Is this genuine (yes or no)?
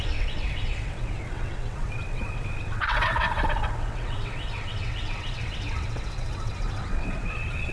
no